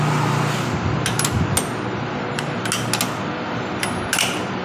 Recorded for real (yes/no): yes